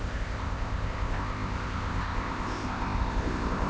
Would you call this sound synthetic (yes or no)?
yes